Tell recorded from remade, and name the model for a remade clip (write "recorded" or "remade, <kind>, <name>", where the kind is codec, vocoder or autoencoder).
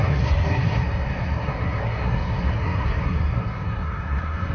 remade, codec, SNAC